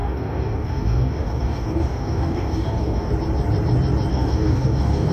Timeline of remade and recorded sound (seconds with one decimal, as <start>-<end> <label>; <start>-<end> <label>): 0.0-3.1 remade; 3.1-4.1 recorded; 4.1-5.1 remade